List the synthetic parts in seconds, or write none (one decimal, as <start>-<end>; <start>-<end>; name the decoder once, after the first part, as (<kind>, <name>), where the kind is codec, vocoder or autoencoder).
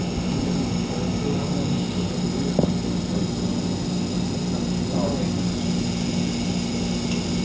none